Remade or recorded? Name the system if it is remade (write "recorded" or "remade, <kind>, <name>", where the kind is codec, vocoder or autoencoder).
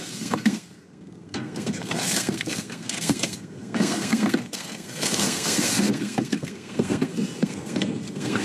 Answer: remade, codec, SNAC